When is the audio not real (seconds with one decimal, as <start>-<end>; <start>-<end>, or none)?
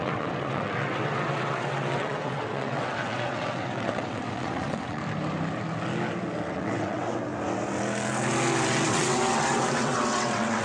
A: 0.0-5.0; 6.5-7.3; 8.9-10.6